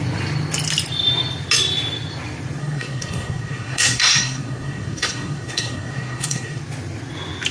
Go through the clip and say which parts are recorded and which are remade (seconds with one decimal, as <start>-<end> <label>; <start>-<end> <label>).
0.0-2.6 recorded; 2.6-6.6 remade; 6.6-7.5 recorded